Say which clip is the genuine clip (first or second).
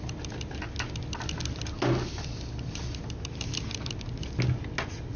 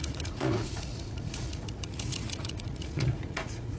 first